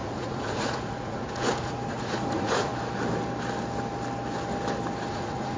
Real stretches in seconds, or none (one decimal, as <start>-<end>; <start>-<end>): 2.7-5.1